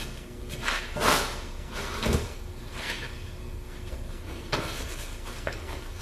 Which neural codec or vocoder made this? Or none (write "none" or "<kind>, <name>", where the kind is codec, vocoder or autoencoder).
codec, SNAC